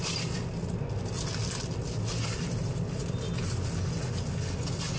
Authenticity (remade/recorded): recorded